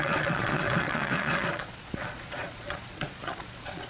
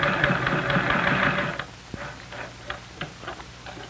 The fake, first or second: first